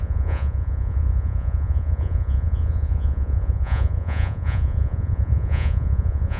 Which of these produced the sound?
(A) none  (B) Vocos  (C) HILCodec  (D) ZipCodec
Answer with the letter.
B